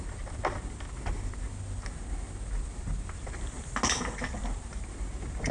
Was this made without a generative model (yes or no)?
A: yes